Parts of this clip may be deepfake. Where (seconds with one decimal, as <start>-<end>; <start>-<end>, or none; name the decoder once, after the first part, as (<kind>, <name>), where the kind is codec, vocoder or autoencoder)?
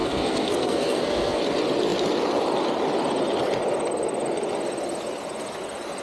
0.0-1.4 (codec, SNAC)